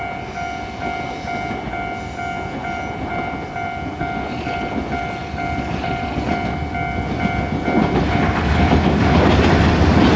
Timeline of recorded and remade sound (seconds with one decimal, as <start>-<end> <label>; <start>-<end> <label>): 0.0-10.2 recorded